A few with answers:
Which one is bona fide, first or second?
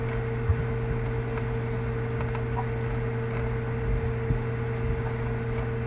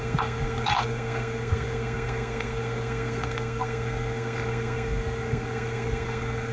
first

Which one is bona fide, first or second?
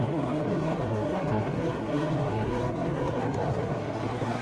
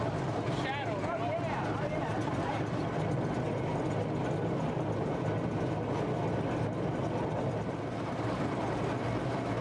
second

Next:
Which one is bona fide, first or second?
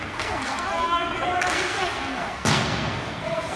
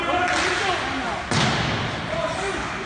second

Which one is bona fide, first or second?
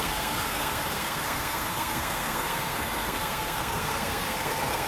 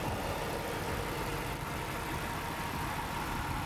second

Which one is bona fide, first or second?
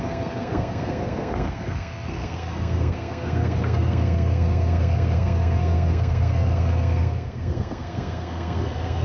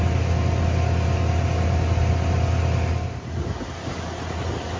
second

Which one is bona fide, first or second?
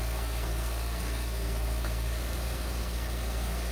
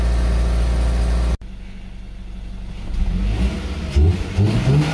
second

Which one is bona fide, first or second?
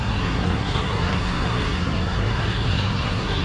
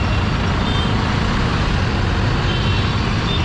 second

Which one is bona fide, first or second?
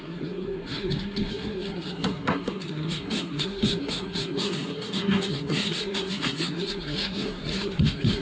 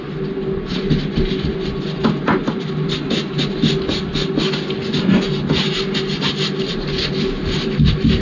second